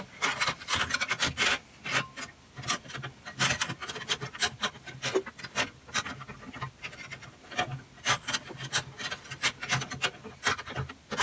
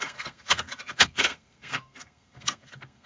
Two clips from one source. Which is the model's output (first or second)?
second